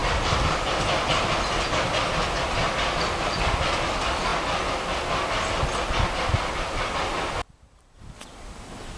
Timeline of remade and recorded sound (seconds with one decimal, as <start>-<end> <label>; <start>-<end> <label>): 0.0-9.0 recorded